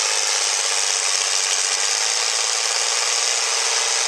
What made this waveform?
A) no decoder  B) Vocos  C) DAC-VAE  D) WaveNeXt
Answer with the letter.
A